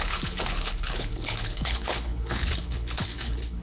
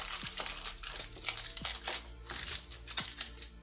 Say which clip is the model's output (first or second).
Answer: first